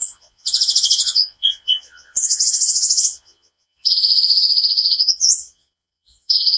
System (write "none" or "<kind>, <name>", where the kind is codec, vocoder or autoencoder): vocoder, Vocos